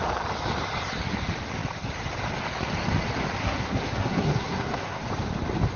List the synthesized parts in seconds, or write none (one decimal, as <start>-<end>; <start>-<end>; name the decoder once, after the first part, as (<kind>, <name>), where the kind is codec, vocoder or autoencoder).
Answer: 3.4-5.0 (codec, SNAC)